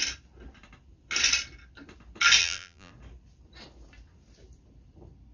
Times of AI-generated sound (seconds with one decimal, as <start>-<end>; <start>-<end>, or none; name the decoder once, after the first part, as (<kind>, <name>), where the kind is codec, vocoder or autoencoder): 2.4-2.9 (vocoder, BigVGAN v2)